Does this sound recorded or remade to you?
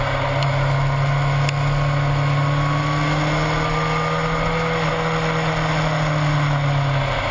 recorded